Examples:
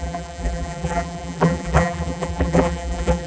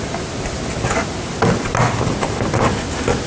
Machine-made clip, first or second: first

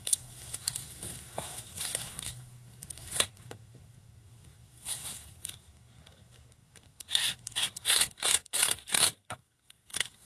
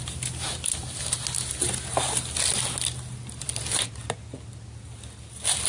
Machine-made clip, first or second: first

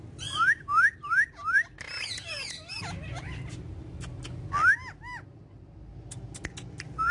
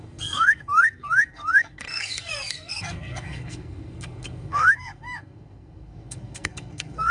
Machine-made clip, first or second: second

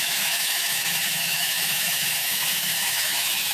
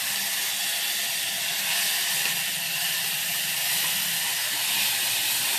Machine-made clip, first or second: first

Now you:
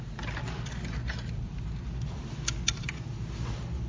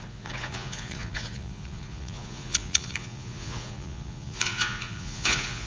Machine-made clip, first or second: second